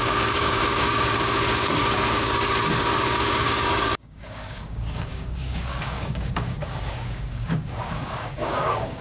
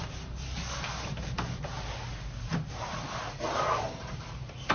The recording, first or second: second